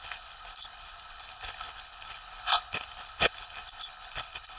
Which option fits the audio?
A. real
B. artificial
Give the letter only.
B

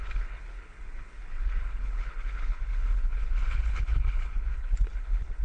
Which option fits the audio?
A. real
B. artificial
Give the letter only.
B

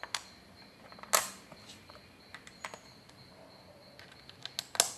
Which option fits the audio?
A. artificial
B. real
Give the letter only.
B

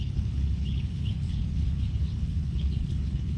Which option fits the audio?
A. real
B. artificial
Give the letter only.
B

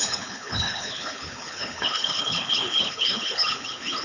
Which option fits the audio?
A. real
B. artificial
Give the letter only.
B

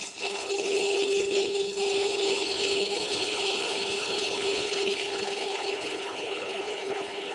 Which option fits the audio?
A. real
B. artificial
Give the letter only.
B